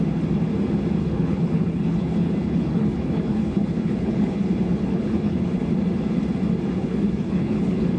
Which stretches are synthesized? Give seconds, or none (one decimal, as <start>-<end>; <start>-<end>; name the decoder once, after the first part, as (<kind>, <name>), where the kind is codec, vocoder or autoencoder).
1.0-5.7 (codec, HILCodec); 6.8-8.0